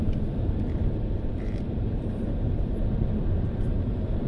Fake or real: fake